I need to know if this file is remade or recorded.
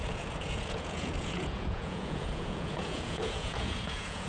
remade